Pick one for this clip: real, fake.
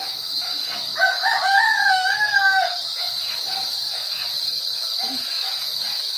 fake